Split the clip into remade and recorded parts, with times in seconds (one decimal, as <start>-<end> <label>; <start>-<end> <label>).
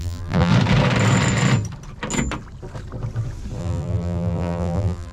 0.0-0.5 remade; 0.5-3.6 recorded; 3.6-5.1 remade